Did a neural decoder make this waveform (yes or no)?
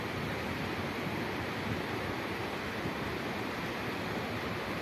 no